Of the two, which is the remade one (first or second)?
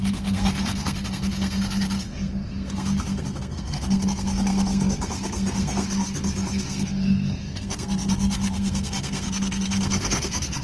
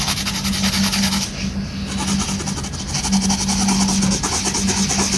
first